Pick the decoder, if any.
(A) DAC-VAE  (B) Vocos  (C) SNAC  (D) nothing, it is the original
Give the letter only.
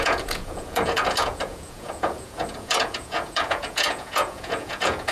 B